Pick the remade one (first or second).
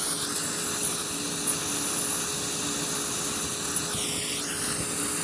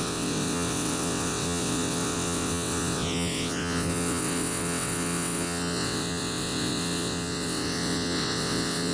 second